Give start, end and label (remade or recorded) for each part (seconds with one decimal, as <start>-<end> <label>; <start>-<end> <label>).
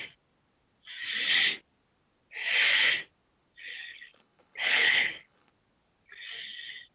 0.0-3.9 recorded; 3.9-5.5 remade; 5.5-6.9 recorded